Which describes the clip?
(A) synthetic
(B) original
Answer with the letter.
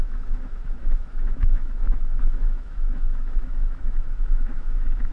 A